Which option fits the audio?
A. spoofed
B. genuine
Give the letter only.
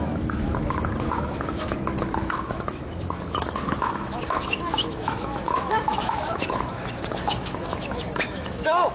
A